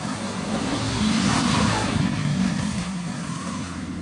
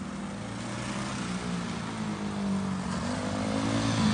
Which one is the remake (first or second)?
first